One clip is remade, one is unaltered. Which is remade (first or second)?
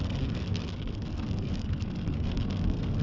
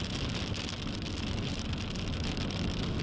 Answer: first